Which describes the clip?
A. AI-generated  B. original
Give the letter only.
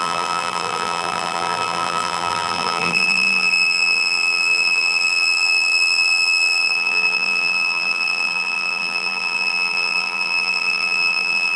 A